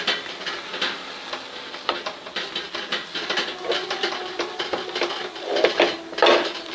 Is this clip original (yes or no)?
yes